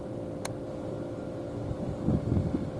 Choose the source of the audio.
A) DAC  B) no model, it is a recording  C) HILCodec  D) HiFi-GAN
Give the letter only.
B